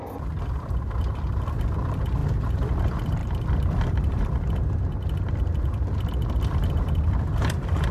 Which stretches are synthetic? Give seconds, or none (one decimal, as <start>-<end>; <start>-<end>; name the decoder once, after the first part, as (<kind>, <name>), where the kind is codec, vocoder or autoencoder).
3.2-7.1 (vocoder, BigVGAN v2)